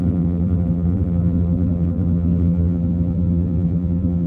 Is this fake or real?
fake